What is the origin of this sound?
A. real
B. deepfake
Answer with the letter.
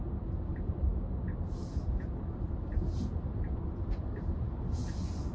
A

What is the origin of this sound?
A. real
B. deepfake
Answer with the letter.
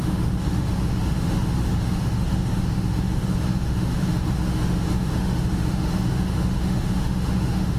B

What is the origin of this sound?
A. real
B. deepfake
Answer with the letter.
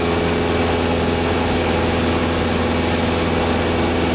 A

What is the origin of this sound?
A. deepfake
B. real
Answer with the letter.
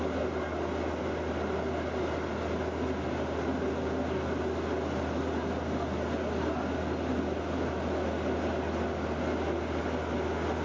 B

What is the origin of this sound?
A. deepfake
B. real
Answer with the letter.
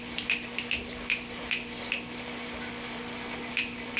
B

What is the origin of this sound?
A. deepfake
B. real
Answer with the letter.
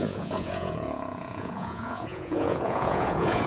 A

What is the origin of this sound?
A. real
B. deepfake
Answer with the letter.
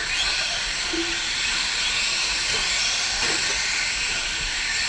A